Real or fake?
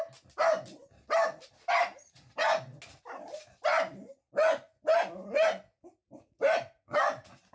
real